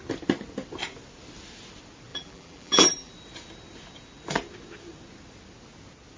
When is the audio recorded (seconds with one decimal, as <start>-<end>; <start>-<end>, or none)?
0.0-2.1; 3.1-6.2